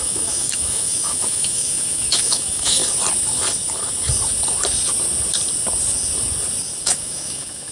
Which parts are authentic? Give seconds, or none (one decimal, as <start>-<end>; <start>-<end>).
2.8-6.8